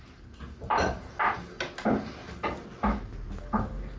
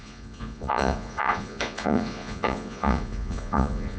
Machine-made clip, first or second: second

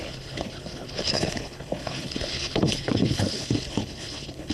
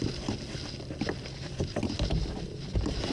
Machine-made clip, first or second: first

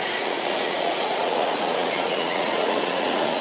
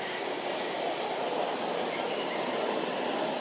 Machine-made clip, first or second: first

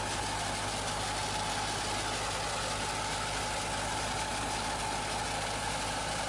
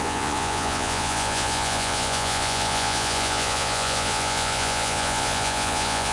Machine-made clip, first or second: second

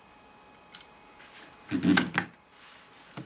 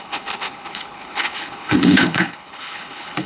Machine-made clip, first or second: second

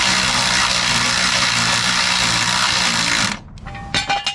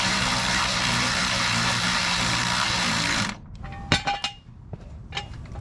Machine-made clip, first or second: second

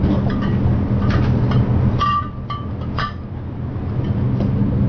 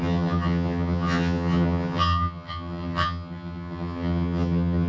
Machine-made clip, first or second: second